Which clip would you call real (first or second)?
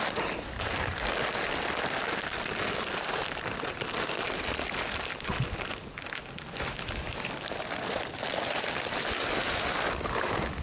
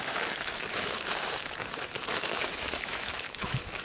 first